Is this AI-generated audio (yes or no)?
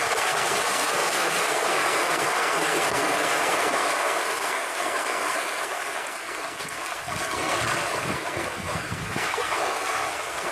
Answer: yes